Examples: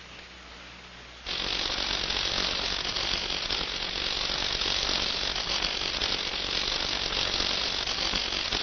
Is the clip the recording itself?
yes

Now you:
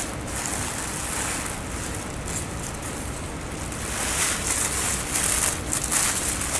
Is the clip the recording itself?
yes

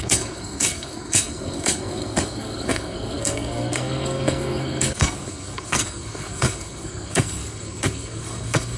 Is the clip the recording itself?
no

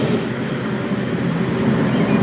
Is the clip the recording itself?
yes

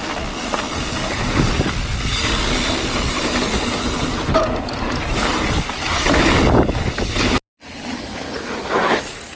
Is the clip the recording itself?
yes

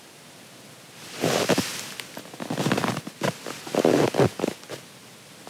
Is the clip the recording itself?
yes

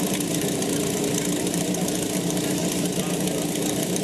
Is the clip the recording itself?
no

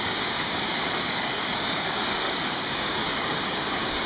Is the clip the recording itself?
no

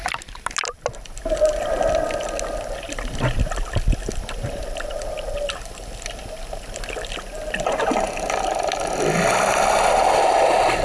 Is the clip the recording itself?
yes